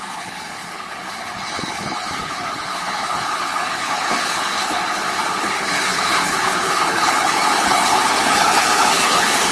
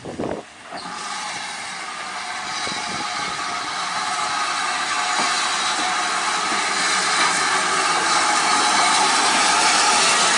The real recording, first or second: second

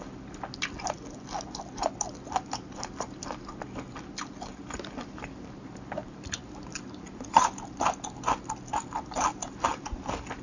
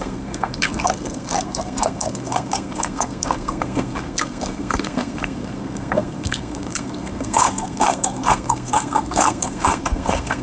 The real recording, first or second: first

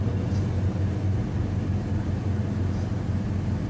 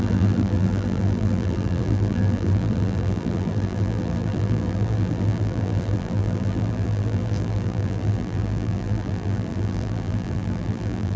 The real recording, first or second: first